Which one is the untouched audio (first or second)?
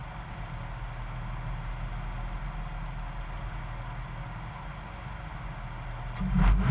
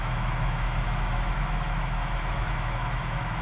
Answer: first